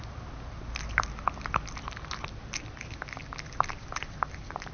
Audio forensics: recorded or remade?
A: recorded